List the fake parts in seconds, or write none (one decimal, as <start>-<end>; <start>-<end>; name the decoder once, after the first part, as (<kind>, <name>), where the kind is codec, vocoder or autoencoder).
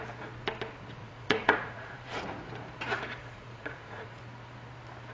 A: 1.0-2.2 (vocoder, Vocos); 3.2-4.2